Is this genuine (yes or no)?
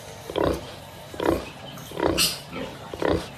yes